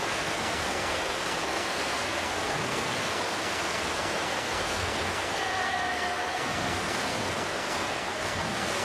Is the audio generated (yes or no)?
yes